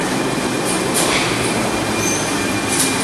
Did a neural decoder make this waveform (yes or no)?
no